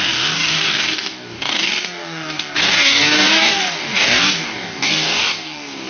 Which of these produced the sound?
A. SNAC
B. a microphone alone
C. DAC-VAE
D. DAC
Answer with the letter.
D